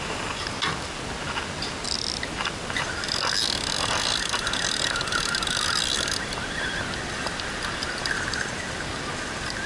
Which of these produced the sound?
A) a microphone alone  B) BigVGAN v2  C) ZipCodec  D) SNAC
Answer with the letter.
A